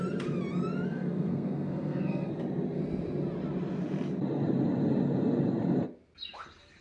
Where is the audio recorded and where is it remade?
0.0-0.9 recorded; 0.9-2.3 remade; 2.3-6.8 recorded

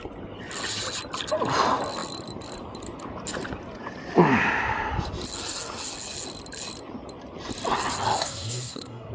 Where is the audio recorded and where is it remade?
0.0-8.2 recorded; 8.2-9.1 remade

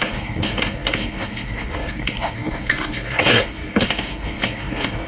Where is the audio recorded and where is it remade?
0.0-5.1 remade

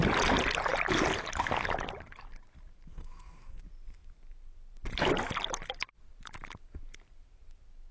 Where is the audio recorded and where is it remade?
0.0-2.9 recorded; 2.9-3.6 remade; 3.6-7.9 recorded